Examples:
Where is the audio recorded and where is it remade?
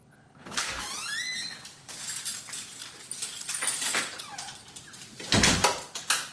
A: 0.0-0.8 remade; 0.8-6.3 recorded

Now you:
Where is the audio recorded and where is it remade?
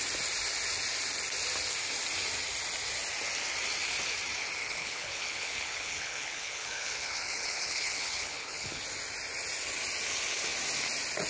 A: 0.0-4.6 recorded; 4.6-8.8 remade; 8.8-11.3 recorded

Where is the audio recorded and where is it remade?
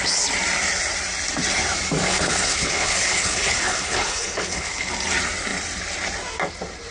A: 0.0-2.1 recorded; 2.1-4.9 remade; 4.9-6.9 recorded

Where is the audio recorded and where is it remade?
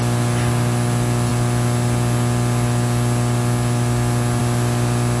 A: 0.0-5.2 recorded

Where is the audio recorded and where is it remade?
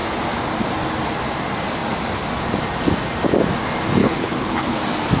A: 0.0-4.0 recorded; 4.0-4.8 remade; 4.8-5.2 recorded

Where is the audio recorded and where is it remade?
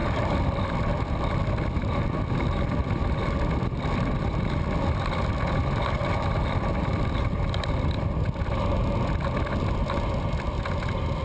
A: 0.0-11.2 recorded